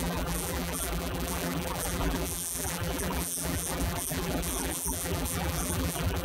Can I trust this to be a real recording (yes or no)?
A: no